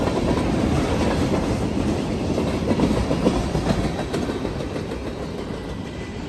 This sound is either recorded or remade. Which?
recorded